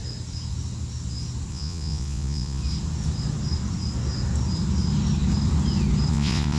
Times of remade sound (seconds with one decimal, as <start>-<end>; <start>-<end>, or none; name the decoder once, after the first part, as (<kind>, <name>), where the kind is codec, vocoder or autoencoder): 1.5-2.6 (vocoder, Vocos); 6.1-6.6